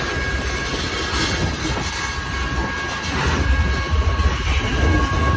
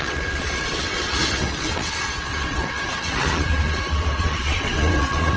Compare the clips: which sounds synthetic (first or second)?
second